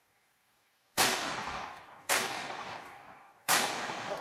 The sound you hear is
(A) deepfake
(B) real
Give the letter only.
A